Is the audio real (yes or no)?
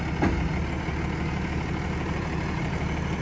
yes